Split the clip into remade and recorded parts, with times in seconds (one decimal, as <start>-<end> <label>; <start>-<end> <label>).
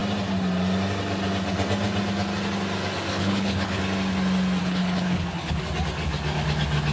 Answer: 0.0-3.1 recorded; 3.1-3.8 remade; 3.8-4.6 recorded; 4.6-5.6 remade; 5.6-6.9 recorded